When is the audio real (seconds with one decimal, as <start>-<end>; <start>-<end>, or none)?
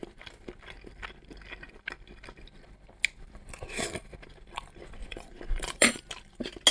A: 0.0-5.0; 6.0-6.7